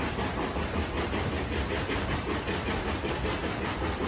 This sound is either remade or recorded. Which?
recorded